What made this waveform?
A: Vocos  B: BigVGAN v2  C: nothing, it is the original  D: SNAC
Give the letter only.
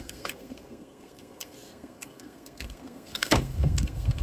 D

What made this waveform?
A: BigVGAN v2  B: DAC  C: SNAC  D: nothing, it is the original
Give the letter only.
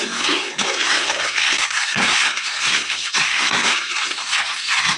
C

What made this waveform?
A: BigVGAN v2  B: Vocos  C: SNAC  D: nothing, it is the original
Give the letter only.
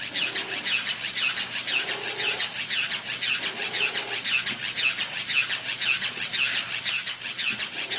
D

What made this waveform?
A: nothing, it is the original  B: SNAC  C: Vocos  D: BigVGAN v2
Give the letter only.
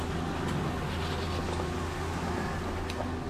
A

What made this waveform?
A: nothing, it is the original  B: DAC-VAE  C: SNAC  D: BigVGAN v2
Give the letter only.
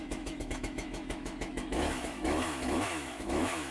B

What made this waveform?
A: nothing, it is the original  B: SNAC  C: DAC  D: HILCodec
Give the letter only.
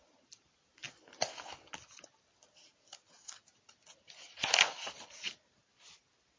A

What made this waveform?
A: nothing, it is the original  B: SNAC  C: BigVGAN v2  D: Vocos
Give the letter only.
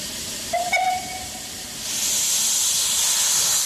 A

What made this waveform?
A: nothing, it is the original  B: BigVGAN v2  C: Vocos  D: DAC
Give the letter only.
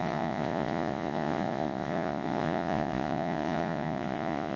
C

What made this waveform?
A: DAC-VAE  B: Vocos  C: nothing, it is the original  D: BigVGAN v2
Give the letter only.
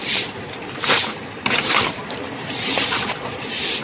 D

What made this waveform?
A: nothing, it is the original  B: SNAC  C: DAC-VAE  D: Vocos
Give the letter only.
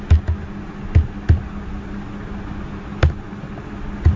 A